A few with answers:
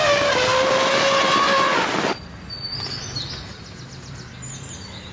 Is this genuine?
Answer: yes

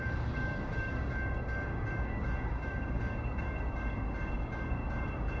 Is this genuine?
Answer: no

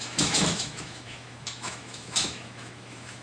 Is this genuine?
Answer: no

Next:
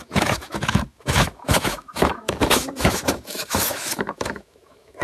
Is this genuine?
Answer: no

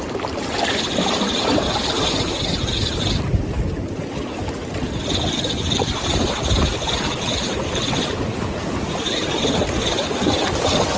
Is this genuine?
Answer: yes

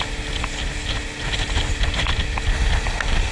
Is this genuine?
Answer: yes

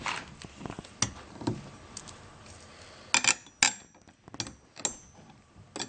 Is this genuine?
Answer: yes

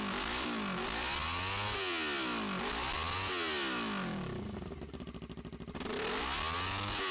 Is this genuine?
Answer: yes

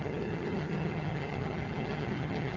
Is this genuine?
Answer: no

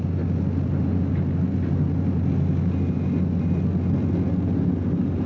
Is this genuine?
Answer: yes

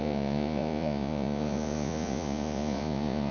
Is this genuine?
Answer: no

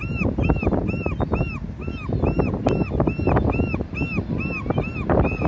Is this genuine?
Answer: yes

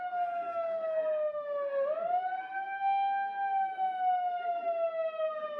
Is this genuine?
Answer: yes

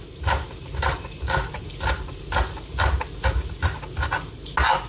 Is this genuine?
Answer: yes